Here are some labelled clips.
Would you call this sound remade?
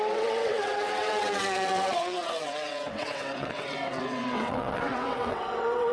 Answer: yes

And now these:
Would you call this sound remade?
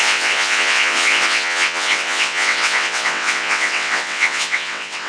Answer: yes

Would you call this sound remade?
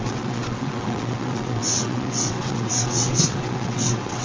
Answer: yes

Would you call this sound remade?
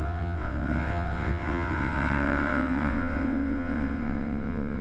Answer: yes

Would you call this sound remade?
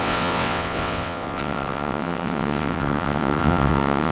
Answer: yes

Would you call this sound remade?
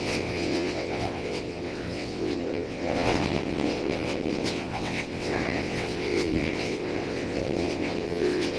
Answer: yes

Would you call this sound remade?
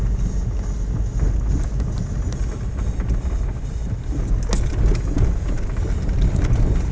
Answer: no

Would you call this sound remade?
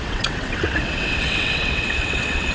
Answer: yes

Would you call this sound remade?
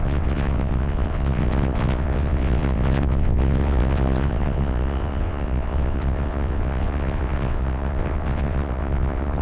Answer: yes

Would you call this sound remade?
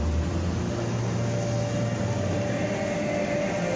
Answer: no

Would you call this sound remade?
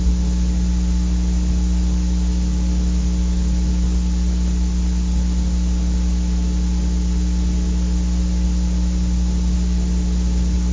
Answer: no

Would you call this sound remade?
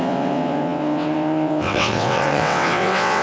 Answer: yes